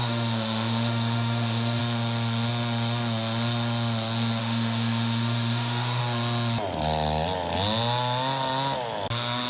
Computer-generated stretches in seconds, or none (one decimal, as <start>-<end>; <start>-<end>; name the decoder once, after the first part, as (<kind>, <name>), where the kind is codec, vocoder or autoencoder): 0.0-1.8 (autoencoder, DAC-VAE); 4.4-6.0